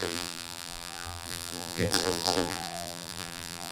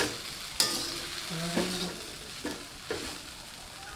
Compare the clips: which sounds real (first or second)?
second